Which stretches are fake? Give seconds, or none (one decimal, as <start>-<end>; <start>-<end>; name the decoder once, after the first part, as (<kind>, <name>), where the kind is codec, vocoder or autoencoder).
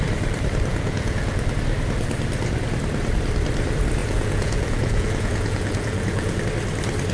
0.7-1.5 (vocoder, Vocos); 4.0-6.4